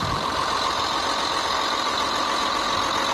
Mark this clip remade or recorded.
recorded